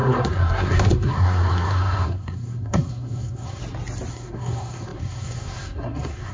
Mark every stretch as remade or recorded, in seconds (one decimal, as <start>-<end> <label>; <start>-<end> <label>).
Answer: 0.0-3.6 remade; 3.6-4.1 recorded; 4.1-6.3 remade

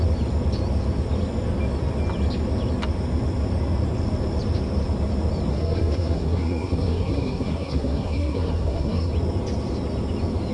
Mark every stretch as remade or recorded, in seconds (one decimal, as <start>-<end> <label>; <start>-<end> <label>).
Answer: 0.0-5.5 recorded; 5.5-9.1 remade; 9.1-10.5 recorded

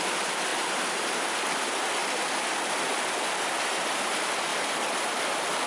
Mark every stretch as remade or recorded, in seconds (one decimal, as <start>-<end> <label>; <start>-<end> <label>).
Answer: 0.0-5.7 recorded

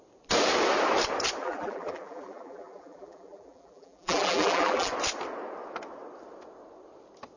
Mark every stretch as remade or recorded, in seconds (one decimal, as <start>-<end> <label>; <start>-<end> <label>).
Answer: 0.0-1.4 recorded; 1.4-4.9 remade; 4.9-7.4 recorded

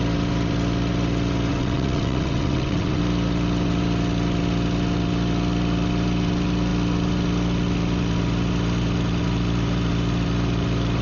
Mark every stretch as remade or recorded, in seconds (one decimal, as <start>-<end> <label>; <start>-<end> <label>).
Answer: 0.0-1.5 recorded; 1.5-3.0 remade; 3.0-11.0 recorded